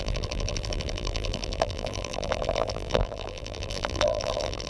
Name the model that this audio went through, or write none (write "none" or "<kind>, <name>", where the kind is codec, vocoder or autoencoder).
vocoder, BigVGAN v2